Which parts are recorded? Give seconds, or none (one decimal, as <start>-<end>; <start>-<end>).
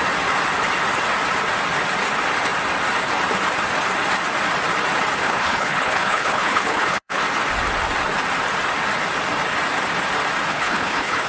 0.0-5.2; 7.2-10.5